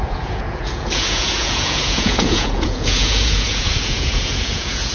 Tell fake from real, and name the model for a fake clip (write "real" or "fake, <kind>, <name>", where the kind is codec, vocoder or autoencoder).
fake, vocoder, Vocos